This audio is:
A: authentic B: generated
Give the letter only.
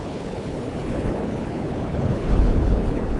B